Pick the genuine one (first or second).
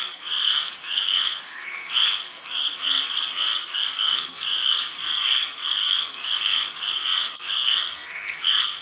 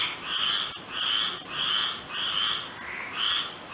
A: second